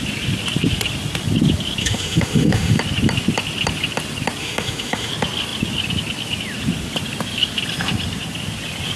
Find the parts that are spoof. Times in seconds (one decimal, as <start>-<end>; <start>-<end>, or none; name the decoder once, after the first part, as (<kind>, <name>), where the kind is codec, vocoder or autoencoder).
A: 1.8-2.8 (autoencoder, DAC-VAE); 4.4-5.1

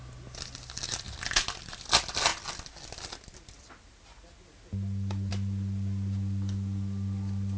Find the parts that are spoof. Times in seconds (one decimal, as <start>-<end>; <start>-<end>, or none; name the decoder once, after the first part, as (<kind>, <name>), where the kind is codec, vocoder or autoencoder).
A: none

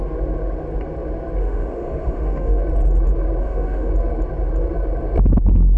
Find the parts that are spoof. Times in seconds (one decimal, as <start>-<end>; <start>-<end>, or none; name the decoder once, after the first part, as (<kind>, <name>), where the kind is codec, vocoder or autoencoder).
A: 1.4-2.6 (autoencoder, DAC-VAE); 3.4-3.9

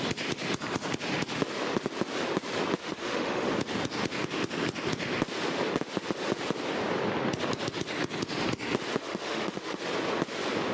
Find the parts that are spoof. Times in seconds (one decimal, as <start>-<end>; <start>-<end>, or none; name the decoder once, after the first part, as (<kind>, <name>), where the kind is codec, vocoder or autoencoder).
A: 2.8-3.5 (autoencoder, DAC-VAE); 9.0-9.8

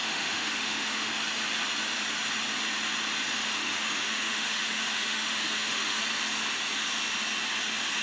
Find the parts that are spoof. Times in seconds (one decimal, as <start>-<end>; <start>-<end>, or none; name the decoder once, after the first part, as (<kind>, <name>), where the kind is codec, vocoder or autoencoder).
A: 0.0-1.1 (autoencoder, DAC-VAE); 3.3-6.0

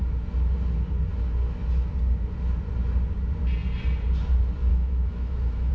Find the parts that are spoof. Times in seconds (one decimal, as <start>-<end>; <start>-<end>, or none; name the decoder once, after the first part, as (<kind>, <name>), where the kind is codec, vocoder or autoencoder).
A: 4.7-5.7 (autoencoder, DAC-VAE)